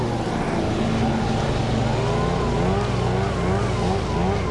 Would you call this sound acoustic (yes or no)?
yes